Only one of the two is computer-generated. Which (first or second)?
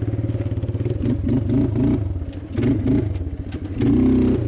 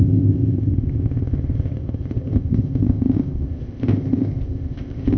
second